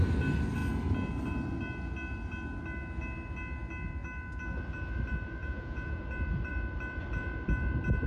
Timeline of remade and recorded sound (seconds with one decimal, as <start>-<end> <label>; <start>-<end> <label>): 0.0-5.4 recorded; 5.4-6.0 remade; 6.0-8.1 recorded